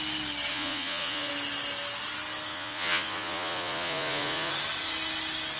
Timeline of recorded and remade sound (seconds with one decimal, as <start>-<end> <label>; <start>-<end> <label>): 0.0-0.5 recorded; 0.5-1.3 remade; 1.3-2.5 recorded; 2.5-4.5 remade; 4.5-5.6 recorded